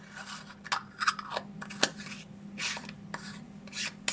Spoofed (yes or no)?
no